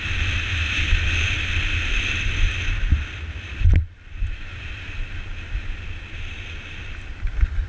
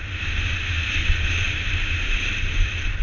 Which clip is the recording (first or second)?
first